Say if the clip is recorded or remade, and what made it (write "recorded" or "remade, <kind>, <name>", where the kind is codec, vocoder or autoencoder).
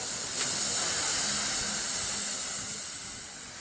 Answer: recorded